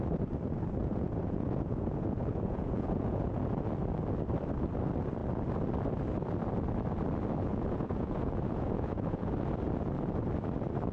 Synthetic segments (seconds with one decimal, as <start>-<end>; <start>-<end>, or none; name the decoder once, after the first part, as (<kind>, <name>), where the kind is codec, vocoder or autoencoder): 0.8-3.4 (vocoder, Vocos); 7.5-9.3